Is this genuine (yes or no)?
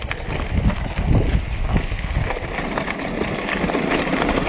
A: yes